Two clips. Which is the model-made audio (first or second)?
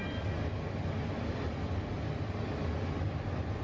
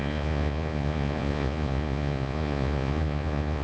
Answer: second